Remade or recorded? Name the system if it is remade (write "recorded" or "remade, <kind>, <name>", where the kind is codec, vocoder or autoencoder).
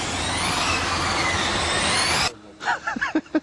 recorded